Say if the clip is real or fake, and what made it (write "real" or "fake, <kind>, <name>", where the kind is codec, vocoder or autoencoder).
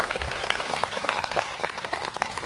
fake, codec, SNAC